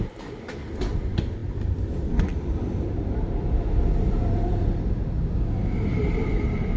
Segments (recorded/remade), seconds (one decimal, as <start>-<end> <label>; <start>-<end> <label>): 0.0-5.9 recorded; 5.9-6.8 remade